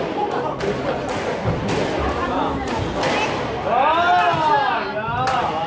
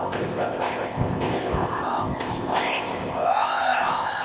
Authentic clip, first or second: first